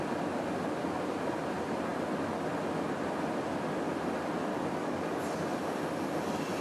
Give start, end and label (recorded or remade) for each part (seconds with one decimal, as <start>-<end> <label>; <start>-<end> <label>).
0.0-4.5 recorded; 4.5-5.2 remade; 5.2-6.6 recorded